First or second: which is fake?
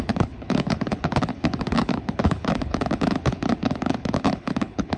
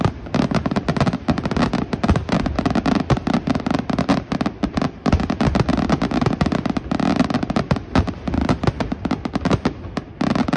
first